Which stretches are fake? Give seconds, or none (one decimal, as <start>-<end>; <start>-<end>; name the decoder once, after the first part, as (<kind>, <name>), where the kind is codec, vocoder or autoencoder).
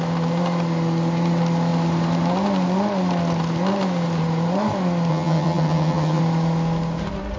5.1-6.2 (vocoder, HiFi-GAN)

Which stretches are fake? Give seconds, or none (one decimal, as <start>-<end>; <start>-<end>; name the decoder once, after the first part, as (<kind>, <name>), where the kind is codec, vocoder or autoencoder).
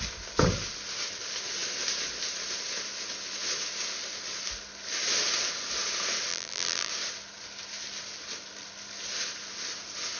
6.3-6.9 (vocoder, BigVGAN v2)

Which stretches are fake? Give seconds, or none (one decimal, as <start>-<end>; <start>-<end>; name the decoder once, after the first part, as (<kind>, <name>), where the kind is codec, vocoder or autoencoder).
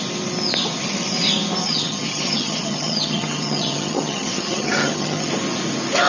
1.6-5.3 (vocoder, HiFi-GAN)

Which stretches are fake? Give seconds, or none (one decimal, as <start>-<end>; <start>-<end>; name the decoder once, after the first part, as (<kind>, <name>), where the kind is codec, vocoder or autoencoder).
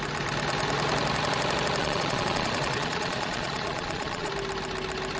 1.8-4.3 (vocoder, Vocos)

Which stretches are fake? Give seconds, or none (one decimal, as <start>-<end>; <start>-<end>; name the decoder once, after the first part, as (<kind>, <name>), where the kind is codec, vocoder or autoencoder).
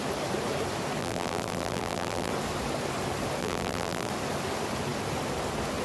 1.0-2.3 (vocoder, BigVGAN v2); 3.4-4.1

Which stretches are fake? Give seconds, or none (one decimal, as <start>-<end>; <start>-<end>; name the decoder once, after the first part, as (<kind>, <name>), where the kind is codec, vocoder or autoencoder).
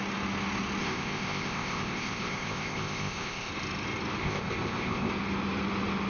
0.8-3.5 (codec, ZipCodec); 4.2-5.1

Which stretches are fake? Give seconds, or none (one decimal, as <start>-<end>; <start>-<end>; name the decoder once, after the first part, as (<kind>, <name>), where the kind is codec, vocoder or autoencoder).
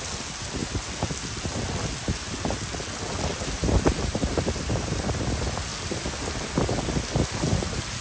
3.3-5.0 (vocoder, BigVGAN v2)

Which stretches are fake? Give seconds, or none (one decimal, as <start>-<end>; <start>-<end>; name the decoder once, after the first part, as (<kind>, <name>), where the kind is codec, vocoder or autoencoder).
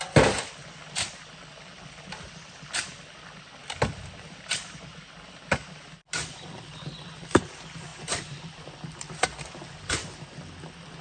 0.0-3.6 (vocoder, BigVGAN v2); 6.5-10.0